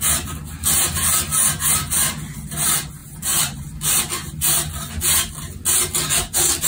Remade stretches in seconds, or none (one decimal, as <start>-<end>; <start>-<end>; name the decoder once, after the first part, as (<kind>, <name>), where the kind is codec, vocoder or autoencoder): none